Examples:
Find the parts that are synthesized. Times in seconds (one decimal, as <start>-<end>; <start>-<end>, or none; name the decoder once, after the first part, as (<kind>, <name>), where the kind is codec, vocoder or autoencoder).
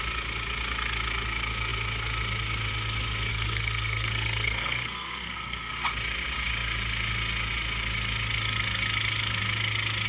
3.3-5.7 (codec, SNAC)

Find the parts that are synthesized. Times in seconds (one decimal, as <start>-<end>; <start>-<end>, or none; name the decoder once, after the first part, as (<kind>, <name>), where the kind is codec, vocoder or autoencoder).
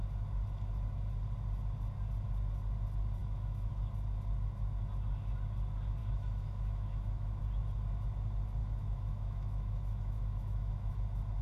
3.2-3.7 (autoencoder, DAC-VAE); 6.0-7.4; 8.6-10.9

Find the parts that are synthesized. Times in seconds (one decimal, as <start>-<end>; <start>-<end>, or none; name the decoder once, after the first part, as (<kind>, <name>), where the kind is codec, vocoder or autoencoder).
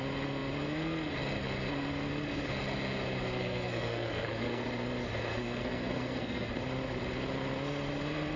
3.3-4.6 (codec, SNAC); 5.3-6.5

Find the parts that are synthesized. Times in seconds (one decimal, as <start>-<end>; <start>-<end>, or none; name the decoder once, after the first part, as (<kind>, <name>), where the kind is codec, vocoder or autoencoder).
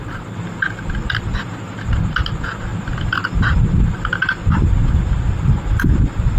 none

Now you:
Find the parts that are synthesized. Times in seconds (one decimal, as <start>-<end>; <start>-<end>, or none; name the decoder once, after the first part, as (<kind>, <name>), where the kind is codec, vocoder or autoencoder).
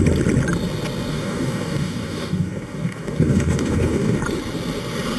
1.1-4.2 (codec, DAC)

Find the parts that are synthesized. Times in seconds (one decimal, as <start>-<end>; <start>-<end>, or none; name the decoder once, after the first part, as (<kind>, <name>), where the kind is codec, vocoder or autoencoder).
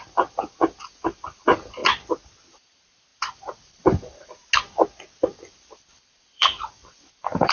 0.0-1.8 (vocoder, BigVGAN v2); 2.5-4.4; 5.3-7.5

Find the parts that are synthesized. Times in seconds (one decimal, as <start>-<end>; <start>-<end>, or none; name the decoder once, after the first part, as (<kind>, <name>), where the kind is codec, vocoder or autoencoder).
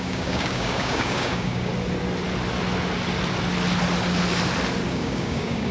0.0-1.7 (codec, DAC); 4.9-5.7